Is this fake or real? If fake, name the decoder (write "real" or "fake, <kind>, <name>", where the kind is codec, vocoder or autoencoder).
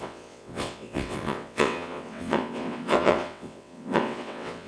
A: fake, vocoder, WaveNeXt